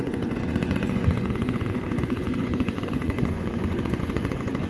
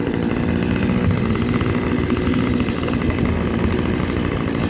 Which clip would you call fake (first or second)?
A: first